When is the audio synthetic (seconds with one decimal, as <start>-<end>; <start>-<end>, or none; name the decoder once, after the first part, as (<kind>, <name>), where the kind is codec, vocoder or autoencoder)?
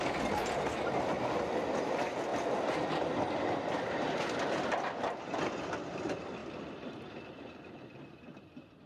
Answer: none